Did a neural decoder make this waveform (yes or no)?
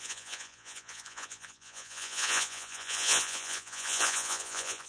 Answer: yes